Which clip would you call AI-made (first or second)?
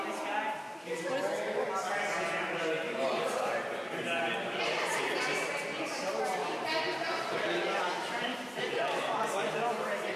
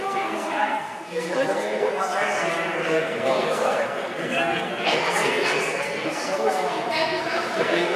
second